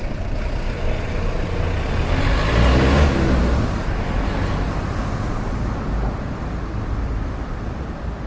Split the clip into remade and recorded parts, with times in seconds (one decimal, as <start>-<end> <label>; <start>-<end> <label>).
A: 0.0-8.3 recorded